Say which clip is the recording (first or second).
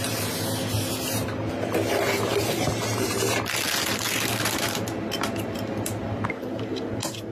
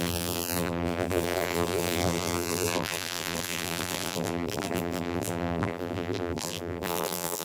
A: first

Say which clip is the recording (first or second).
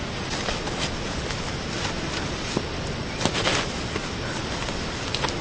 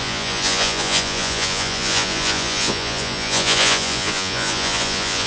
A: first